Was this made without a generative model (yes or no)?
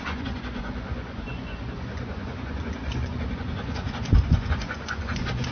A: no